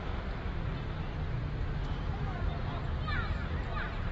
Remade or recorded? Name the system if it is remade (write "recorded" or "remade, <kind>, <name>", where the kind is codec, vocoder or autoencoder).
recorded